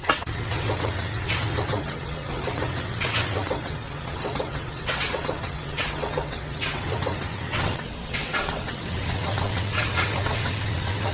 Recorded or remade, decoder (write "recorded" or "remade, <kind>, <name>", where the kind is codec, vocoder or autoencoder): remade, vocoder, WaveNeXt